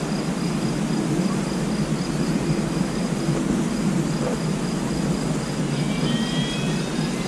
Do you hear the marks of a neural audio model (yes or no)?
no